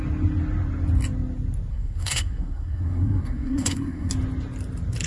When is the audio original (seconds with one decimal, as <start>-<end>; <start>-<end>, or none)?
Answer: 0.0-1.7; 4.1-5.1